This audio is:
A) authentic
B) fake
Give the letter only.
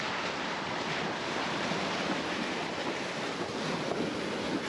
A